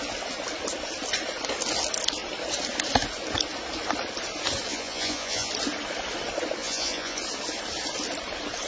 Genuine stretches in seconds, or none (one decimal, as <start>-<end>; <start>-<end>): 0.0-4.7; 5.5-6.6; 7.2-8.7